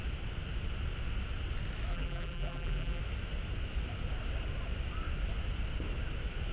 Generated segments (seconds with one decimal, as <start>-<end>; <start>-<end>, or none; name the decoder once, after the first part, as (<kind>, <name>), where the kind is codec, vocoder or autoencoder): 1.9-3.0 (vocoder, BigVGAN v2)